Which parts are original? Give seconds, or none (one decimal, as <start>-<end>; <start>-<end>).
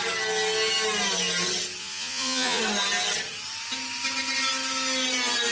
0.0-1.8; 2.6-5.5